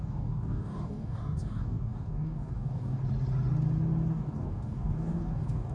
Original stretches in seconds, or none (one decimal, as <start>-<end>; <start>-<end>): 3.0-4.1